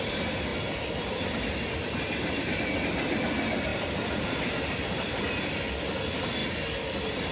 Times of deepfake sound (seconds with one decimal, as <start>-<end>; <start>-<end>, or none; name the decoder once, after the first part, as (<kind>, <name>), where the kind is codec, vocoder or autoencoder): 0.5-2.7 (vocoder, BigVGAN v2); 3.7-5.3; 6.4-7.3